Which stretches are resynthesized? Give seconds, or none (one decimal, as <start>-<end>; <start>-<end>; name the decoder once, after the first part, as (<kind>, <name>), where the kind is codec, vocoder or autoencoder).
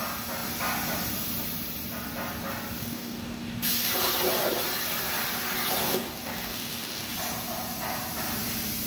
2.8-3.9 (codec, DAC); 5.8-7.1